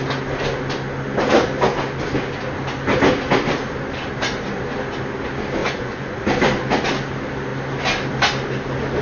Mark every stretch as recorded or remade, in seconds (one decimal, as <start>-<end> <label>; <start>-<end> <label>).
0.0-5.6 recorded; 5.6-6.2 remade; 6.2-9.0 recorded

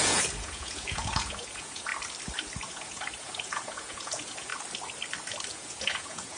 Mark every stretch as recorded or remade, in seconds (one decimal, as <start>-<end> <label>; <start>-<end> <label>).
0.0-1.9 remade; 1.9-2.7 recorded; 2.7-4.5 remade; 4.5-5.5 recorded; 5.5-6.4 remade

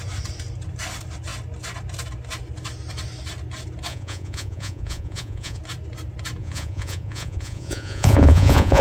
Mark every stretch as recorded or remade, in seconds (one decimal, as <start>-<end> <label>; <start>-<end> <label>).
0.0-3.9 recorded; 3.9-5.6 remade; 5.6-6.4 recorded; 6.4-8.8 remade

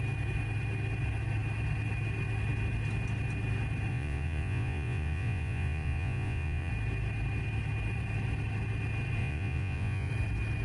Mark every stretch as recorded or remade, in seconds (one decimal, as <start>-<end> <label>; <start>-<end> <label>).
0.0-3.9 recorded; 3.9-6.7 remade; 6.7-9.2 recorded; 9.2-10.1 remade; 10.1-10.6 recorded

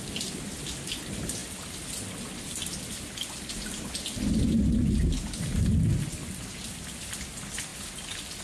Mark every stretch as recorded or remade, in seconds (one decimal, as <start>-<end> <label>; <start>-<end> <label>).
0.0-8.4 recorded

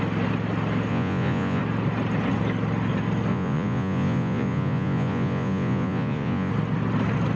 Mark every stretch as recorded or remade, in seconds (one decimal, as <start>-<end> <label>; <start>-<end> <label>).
0.0-0.9 recorded; 0.9-1.6 remade; 1.6-3.3 recorded; 3.3-6.5 remade; 6.5-7.4 recorded

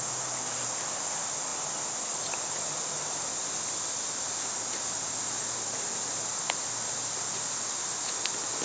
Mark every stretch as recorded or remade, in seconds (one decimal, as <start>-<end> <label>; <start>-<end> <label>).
0.0-8.6 recorded

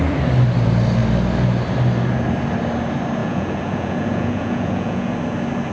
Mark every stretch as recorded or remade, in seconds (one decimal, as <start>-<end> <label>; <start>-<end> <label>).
0.0-3.2 recorded; 3.2-5.1 remade; 5.1-5.7 recorded